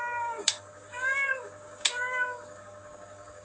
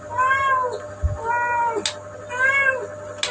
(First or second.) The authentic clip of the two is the second